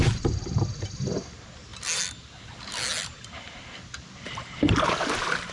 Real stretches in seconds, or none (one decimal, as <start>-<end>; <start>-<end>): 0.0-5.5